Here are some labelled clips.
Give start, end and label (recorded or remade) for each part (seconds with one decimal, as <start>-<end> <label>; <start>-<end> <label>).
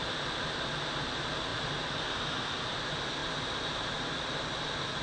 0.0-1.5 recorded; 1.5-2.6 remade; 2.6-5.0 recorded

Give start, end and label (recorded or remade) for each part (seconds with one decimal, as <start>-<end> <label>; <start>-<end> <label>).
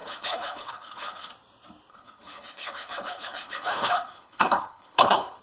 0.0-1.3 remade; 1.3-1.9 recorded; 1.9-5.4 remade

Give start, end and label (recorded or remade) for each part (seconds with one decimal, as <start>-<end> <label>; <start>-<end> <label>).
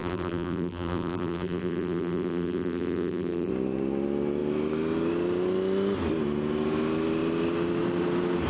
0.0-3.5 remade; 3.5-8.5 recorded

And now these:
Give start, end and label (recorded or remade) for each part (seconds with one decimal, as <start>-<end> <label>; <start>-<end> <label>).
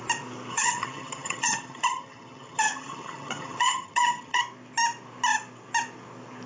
0.0-0.5 recorded; 0.5-4.4 remade; 4.4-6.5 recorded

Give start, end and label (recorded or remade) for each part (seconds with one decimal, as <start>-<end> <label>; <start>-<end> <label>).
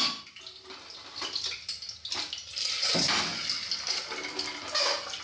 0.0-5.2 recorded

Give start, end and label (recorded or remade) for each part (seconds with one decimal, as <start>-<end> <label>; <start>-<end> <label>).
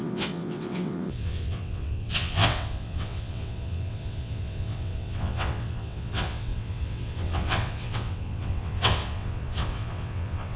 0.0-10.6 remade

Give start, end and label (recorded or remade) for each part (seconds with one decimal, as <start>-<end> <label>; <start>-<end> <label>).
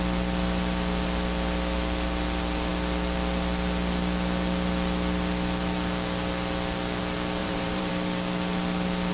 0.0-7.4 recorded; 7.4-7.9 remade; 7.9-9.1 recorded